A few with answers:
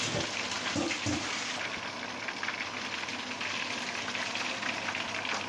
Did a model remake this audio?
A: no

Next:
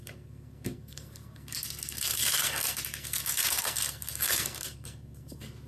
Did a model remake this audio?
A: yes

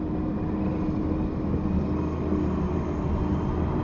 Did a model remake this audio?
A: no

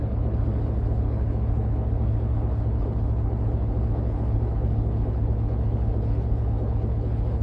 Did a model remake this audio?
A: yes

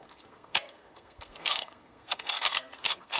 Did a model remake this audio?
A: yes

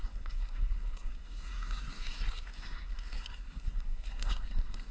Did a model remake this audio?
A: yes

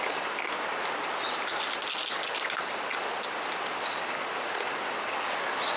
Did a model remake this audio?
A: no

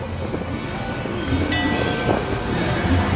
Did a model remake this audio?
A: no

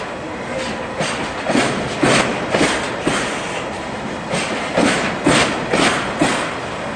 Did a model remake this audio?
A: no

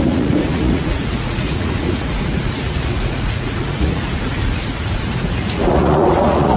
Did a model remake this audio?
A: yes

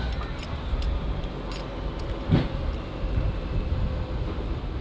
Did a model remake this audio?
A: no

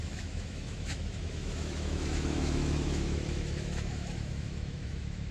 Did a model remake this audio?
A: yes